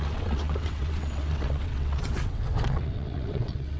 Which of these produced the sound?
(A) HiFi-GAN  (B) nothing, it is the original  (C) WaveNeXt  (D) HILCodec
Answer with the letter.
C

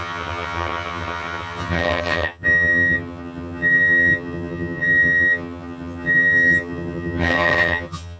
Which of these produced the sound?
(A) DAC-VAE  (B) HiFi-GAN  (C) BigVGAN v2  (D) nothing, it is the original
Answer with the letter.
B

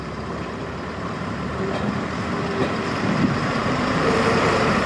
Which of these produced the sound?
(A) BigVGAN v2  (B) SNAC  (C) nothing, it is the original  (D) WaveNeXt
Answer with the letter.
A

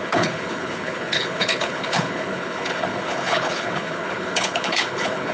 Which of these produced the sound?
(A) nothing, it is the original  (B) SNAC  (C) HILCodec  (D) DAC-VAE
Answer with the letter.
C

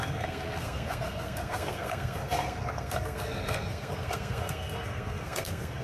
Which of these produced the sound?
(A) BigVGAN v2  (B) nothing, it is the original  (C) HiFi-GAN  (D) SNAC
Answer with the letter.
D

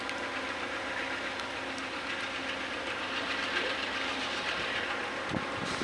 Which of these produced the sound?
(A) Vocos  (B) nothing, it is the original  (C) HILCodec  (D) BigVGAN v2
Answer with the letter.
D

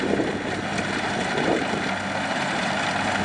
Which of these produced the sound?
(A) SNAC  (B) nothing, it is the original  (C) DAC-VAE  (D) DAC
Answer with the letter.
B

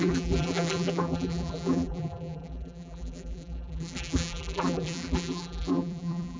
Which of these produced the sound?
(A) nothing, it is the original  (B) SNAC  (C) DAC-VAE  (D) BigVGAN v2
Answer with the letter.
D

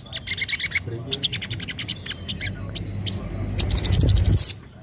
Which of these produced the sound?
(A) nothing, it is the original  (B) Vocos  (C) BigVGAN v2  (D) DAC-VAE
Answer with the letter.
A